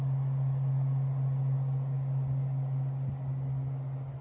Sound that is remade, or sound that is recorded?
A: recorded